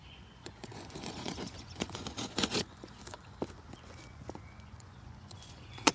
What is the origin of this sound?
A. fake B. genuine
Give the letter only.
A